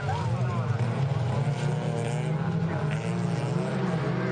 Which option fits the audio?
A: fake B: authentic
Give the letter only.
B